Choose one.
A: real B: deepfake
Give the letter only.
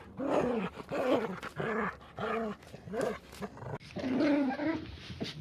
A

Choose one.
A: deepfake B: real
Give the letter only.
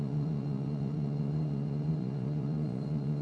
A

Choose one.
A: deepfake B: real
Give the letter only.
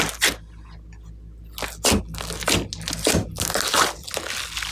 B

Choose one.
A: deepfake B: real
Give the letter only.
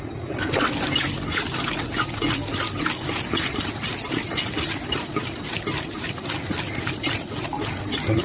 B